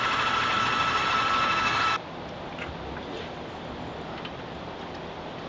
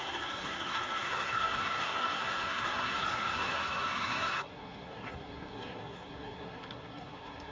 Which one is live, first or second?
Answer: first